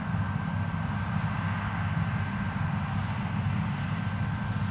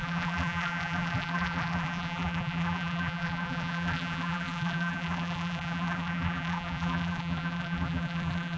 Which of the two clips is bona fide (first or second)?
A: first